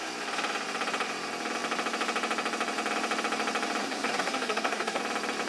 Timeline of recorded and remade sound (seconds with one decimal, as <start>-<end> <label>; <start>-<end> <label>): 0.0-3.8 recorded; 3.8-5.0 remade; 5.0-5.5 recorded